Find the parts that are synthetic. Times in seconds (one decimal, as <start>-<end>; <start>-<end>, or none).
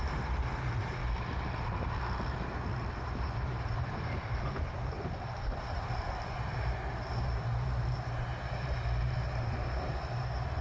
0.0-1.0; 3.0-10.6